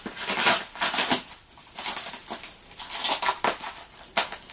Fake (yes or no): no